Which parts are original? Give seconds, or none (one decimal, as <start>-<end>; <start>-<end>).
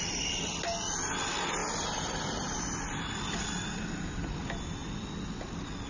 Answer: 0.0-5.9